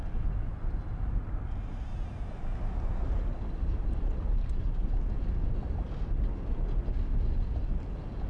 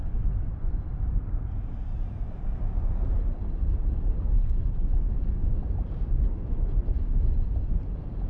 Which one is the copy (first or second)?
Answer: second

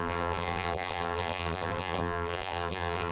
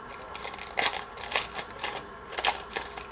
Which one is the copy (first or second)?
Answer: first